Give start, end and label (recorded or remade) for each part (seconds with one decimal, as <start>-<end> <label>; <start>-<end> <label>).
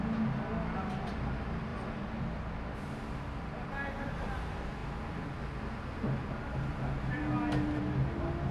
0.0-8.5 recorded